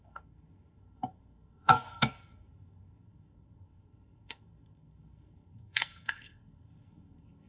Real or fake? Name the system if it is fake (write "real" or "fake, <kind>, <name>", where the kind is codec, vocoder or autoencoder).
fake, codec, SNAC